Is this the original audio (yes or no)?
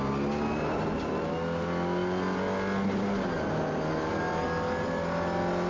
yes